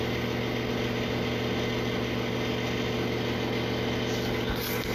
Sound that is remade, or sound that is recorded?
recorded